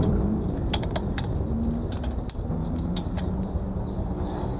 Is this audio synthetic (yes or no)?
no